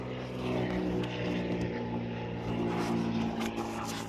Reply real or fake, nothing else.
real